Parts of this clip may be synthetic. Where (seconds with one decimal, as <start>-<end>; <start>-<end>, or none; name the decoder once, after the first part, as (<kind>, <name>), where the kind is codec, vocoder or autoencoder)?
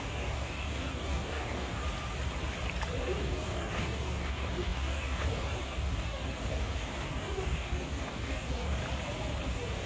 0.0-1.8 (codec, DAC); 3.0-8.8; 9.5-9.9